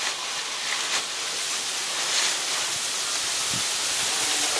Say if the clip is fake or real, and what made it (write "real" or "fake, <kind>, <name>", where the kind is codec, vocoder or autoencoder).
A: real